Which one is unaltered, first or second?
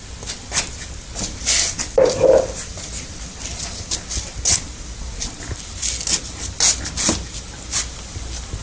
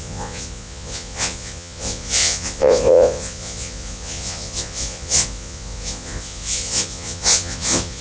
first